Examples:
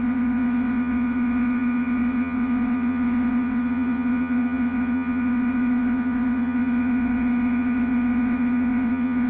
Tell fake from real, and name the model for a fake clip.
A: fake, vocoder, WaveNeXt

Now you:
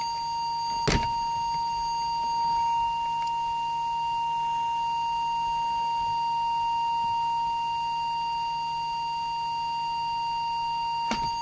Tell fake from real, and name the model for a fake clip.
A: real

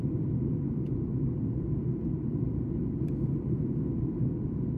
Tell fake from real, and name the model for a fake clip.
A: real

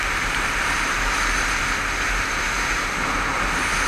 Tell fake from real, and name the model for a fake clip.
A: real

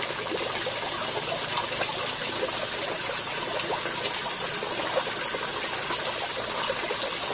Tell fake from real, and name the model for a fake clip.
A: real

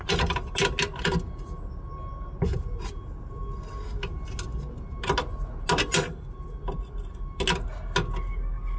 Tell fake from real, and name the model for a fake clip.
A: real